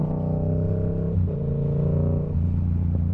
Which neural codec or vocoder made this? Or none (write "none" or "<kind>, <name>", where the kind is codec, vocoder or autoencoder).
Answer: none